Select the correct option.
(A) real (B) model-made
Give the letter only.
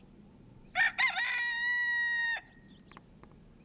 A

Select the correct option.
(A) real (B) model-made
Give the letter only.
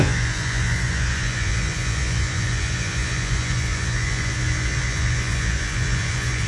B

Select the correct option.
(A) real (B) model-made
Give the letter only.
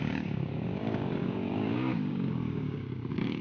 B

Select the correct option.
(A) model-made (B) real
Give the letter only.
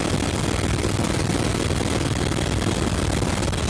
B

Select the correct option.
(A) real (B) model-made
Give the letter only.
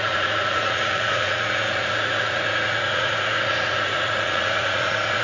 B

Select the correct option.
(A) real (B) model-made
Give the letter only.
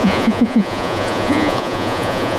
B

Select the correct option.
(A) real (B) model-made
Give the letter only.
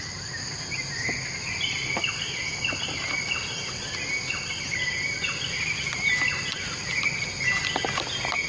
A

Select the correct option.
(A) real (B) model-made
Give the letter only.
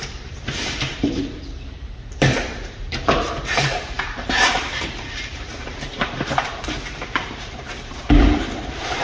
B